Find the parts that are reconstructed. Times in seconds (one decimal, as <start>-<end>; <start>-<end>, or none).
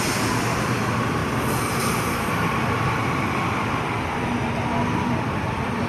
none